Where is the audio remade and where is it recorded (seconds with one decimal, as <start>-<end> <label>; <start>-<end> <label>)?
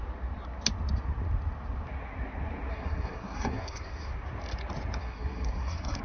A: 0.0-2.7 recorded; 2.7-4.1 remade; 4.1-5.0 recorded; 5.0-6.0 remade